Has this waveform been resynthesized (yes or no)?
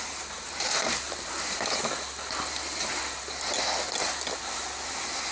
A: no